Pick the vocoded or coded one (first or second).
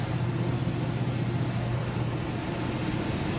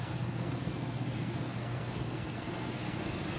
second